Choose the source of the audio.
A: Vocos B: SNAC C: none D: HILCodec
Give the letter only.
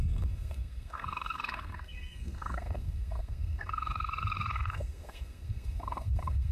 B